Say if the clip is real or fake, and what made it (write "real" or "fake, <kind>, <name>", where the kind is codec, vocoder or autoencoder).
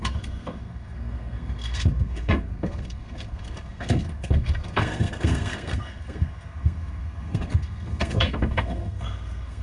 fake, codec, SNAC